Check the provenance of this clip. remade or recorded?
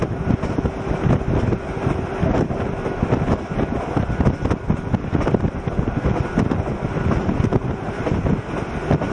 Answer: recorded